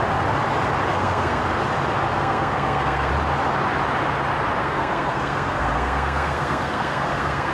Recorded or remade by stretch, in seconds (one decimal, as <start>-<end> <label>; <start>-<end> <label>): 0.0-0.9 recorded; 0.9-1.4 remade; 1.4-2.1 recorded; 2.1-3.1 remade; 3.1-4.6 recorded; 4.6-7.5 remade